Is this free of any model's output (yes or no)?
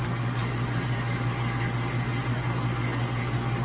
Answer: yes